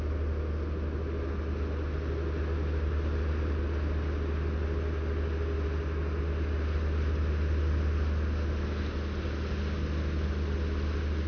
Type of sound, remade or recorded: recorded